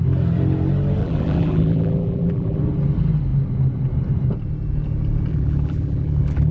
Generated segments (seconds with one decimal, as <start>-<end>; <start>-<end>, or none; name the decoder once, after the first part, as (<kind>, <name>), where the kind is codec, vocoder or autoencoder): 1.0-2.6 (vocoder, BigVGAN v2); 5.3-6.5